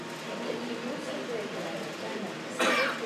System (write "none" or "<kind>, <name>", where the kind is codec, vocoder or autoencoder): none